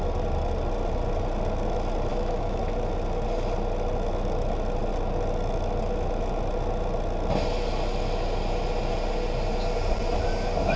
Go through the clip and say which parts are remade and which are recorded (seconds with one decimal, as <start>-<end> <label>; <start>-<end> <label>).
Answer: 0.0-2.1 recorded; 2.1-2.6 remade; 2.6-10.8 recorded